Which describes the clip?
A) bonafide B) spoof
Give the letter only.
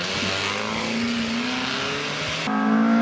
A